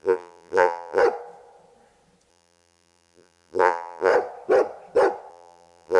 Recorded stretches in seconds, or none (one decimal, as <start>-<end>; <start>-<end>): 1.0-2.3; 4.1-5.3